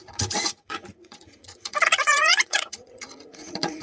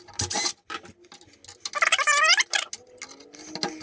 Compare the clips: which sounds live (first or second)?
second